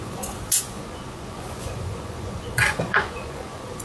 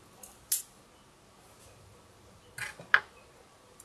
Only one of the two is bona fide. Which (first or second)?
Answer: second